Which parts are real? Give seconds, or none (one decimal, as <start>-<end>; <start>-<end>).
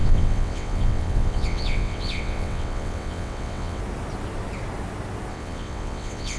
3.8-5.3